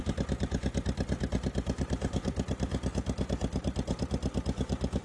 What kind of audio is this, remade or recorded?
remade